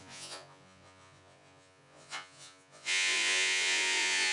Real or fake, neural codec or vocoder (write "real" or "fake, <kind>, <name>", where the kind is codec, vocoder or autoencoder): fake, vocoder, Vocos